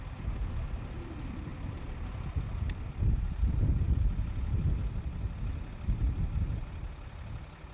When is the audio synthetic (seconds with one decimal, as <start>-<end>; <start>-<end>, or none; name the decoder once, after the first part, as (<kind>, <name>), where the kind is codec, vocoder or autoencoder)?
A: none